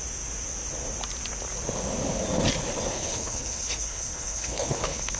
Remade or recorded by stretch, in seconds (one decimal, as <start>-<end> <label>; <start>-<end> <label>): 0.0-2.9 recorded; 2.9-5.2 remade